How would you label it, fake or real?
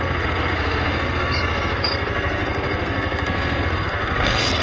fake